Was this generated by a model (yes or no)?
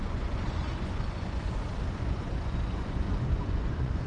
yes